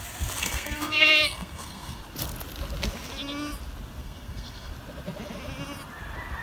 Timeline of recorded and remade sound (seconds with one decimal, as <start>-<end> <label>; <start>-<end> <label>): 0.0-0.4 recorded; 0.4-2.0 remade; 2.0-4.0 recorded; 4.0-4.7 remade; 4.7-6.4 recorded